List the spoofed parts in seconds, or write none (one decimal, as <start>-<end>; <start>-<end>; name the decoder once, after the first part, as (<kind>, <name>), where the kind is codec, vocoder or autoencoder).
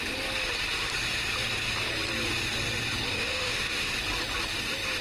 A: 3.1-3.9 (autoencoder, DAC-VAE)